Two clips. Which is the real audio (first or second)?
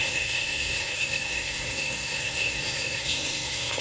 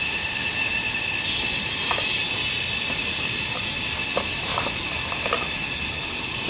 second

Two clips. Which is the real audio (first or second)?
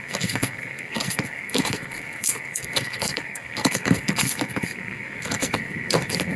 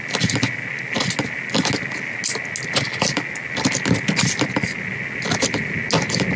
second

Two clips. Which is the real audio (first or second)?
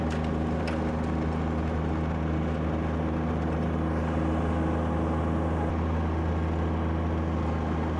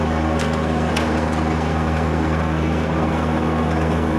first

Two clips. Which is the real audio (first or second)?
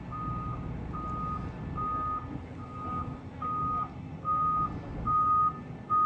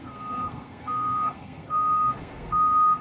first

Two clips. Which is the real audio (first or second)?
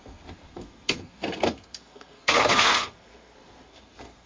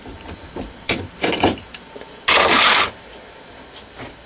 second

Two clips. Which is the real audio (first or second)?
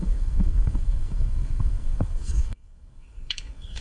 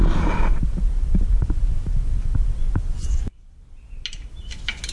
second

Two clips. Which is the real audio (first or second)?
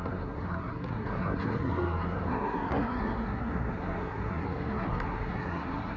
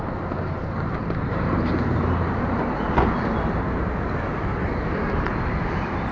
second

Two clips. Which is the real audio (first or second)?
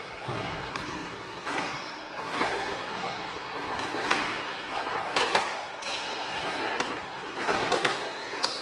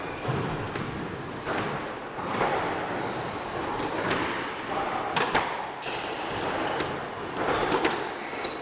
second